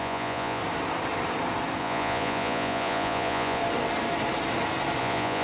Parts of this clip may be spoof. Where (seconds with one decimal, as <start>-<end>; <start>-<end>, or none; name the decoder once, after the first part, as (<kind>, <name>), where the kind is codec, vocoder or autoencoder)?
0.0-0.6 (vocoder, Vocos); 1.8-3.6; 5.0-5.4